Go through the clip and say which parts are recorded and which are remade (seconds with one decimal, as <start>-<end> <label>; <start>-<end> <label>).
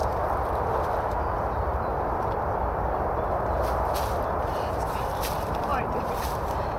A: 0.0-1.5 recorded; 1.5-1.9 remade; 1.9-2.9 recorded; 2.9-6.8 remade